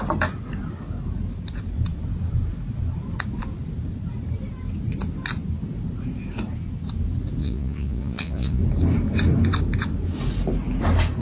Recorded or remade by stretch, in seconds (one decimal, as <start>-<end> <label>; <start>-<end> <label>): 0.0-7.4 recorded; 7.4-8.6 remade; 8.6-11.2 recorded